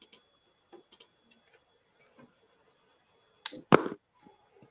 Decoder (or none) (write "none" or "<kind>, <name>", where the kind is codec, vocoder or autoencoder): none